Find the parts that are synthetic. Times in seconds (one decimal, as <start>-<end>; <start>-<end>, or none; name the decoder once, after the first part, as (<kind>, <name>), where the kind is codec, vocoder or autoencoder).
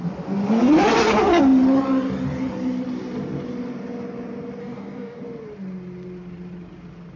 4.6-5.2 (codec, DAC)